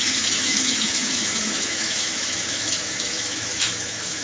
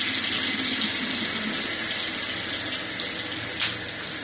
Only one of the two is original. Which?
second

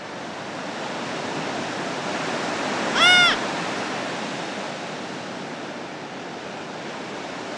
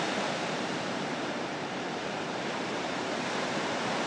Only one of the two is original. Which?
first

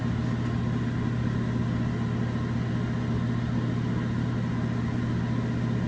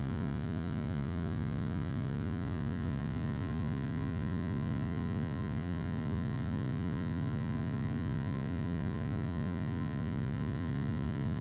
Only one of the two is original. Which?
first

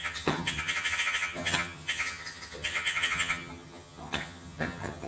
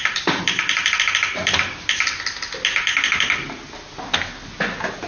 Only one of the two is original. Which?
second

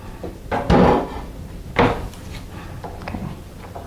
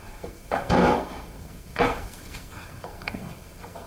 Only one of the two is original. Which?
first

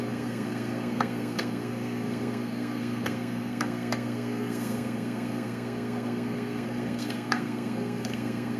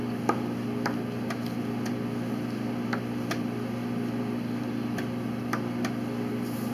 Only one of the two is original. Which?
second